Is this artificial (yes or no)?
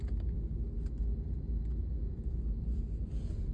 no